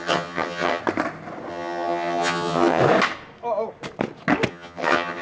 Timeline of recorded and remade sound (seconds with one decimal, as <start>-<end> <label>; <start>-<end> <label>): 0.0-0.8 remade; 0.8-1.5 recorded; 1.5-2.8 remade; 2.8-4.5 recorded; 4.5-5.2 remade